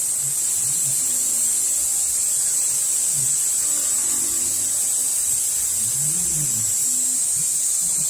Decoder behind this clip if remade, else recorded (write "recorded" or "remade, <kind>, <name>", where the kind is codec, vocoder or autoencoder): recorded